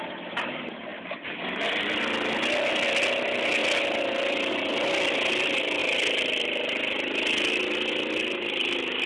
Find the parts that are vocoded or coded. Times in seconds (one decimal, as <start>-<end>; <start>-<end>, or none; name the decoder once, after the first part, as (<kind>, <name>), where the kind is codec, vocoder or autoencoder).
0.9-1.9 (vocoder, BigVGAN v2); 5.8-7.5

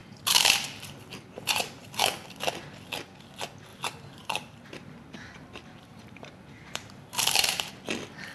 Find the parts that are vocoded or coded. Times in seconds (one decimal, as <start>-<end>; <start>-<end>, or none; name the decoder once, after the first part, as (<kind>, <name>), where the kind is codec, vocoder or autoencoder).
0.0-2.0 (vocoder, BigVGAN v2); 3.7-7.7